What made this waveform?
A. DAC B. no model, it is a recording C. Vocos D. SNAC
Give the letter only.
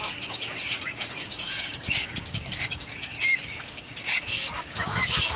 A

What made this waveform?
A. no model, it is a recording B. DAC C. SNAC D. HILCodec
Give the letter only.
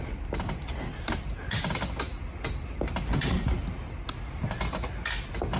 A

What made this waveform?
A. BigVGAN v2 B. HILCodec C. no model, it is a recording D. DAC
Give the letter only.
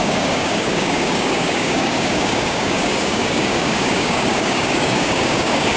D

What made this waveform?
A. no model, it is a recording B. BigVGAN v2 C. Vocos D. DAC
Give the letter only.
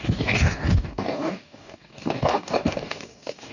D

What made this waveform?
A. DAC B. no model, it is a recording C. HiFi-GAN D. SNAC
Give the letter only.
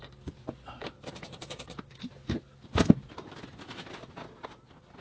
B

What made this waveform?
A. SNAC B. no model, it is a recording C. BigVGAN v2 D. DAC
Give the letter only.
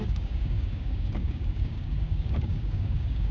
D